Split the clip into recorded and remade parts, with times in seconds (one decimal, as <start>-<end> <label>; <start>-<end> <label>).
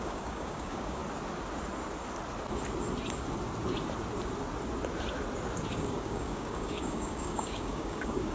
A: 0.0-1.0 remade; 1.0-5.7 recorded; 5.7-8.3 remade